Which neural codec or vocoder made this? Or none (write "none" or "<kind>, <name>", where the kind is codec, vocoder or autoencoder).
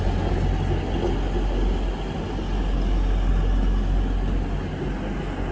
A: none